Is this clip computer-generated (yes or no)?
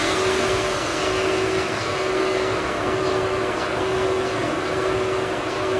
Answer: yes